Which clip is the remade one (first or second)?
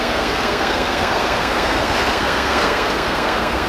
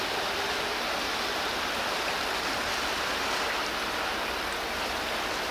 first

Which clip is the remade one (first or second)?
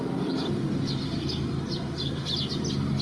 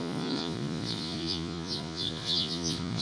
second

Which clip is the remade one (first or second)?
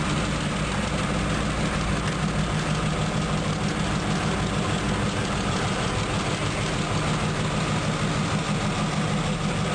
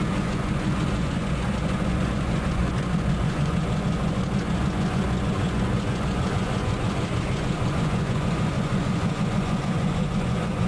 second